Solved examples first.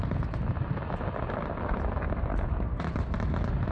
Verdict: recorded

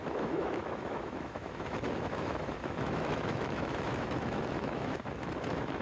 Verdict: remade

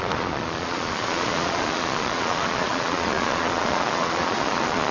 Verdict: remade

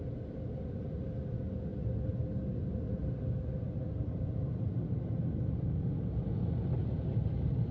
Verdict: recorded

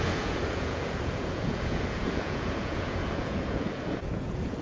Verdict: remade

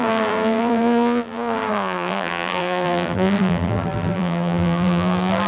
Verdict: remade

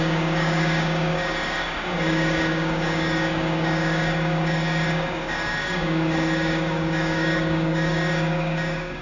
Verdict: remade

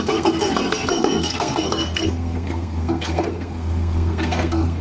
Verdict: remade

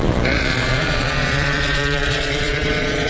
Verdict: remade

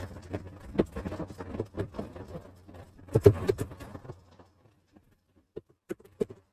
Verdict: recorded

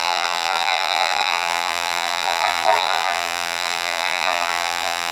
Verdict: remade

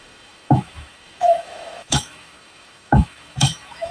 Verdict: remade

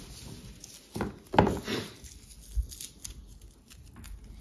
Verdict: recorded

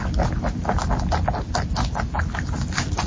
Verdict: recorded